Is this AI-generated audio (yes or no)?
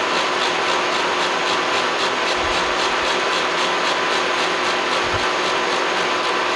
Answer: no